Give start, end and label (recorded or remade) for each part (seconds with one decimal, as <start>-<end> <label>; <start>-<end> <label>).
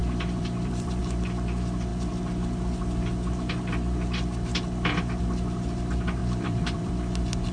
0.0-1.0 remade; 1.0-6.2 recorded; 6.2-6.9 remade; 6.9-7.5 recorded